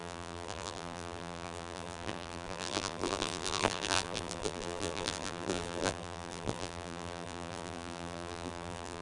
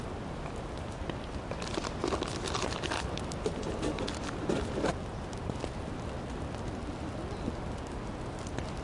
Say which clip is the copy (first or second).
first